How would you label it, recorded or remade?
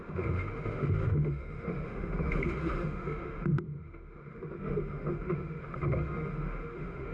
remade